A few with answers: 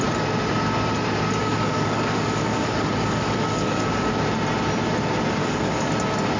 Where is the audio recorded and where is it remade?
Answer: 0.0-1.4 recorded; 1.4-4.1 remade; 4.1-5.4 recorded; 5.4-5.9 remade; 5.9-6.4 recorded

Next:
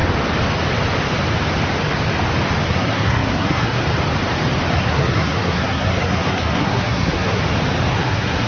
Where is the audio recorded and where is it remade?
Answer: 0.0-2.7 recorded; 2.7-3.8 remade; 3.8-4.7 recorded; 4.7-7.4 remade; 7.4-7.9 recorded; 7.9-8.5 remade

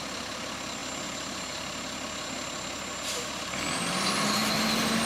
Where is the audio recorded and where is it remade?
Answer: 0.0-5.1 recorded

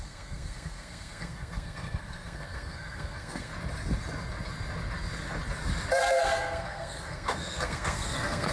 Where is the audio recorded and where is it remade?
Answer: 0.0-3.5 remade; 3.5-6.0 recorded; 6.0-8.5 remade